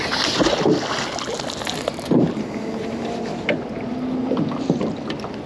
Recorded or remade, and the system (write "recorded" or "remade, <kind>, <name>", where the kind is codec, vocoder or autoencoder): recorded